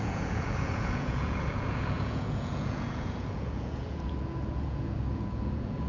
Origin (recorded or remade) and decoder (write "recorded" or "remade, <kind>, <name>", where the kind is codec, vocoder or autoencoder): remade, vocoder, Vocos